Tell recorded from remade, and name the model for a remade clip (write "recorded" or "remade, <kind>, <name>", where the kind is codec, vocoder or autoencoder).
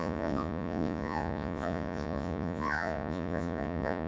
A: remade, vocoder, Vocos